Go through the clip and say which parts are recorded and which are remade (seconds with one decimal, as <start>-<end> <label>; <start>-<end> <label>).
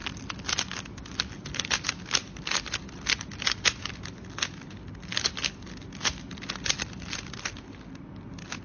0.0-8.6 recorded